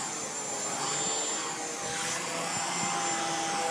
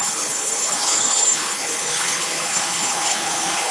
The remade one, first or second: second